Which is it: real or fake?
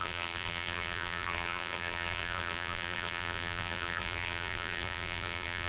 fake